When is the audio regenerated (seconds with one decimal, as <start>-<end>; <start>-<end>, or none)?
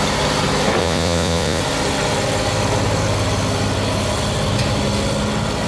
0.8-1.6